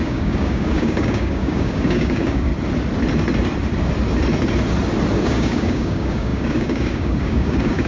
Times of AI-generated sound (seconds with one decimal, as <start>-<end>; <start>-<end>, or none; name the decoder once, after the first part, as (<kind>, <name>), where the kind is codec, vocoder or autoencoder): 0.0-2.5 (codec, DAC); 5.2-7.9